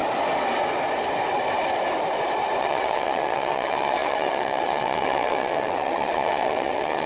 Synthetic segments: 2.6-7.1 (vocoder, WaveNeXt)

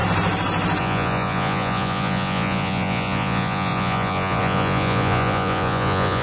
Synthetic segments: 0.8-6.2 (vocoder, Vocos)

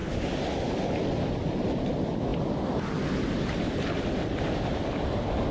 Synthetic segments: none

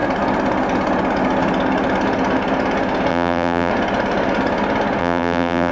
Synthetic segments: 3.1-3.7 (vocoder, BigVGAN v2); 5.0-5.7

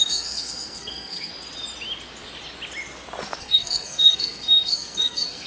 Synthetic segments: 0.0-1.3 (codec, SNAC); 3.4-5.5

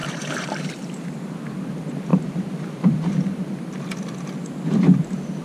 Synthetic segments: 0.0-0.7 (vocoder, BigVGAN v2); 2.1-3.7

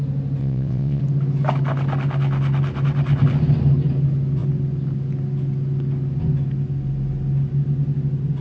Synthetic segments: 0.4-1.0 (vocoder, WaveNeXt)

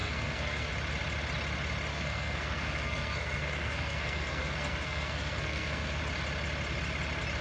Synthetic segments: 0.0-0.7 (codec, SNAC); 1.9-6.0